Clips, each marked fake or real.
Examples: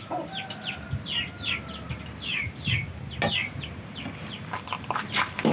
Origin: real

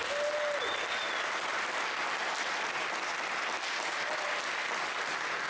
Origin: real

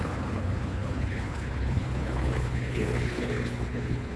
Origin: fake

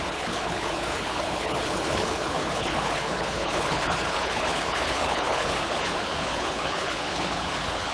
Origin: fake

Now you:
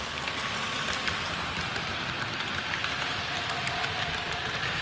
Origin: real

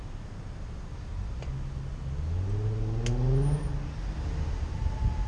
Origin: real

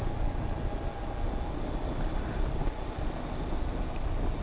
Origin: real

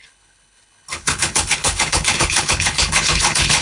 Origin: fake